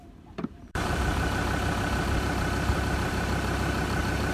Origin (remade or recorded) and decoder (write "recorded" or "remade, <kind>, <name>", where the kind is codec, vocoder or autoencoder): remade, vocoder, BigVGAN v2